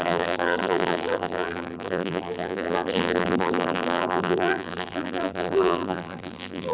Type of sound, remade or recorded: remade